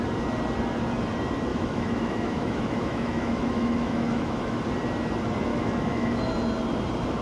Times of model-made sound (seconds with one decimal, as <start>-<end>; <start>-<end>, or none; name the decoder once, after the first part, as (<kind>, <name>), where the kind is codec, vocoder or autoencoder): 1.5-4.6 (autoencoder, DAC-VAE); 5.5-6.2